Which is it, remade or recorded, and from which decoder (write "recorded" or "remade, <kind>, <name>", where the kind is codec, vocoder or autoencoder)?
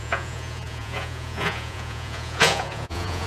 remade, vocoder, Vocos